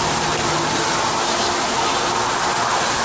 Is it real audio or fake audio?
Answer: real